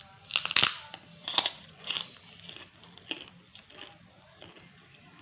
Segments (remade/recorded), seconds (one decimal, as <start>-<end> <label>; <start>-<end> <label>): 0.0-1.2 recorded; 1.2-1.9 remade; 1.9-5.2 recorded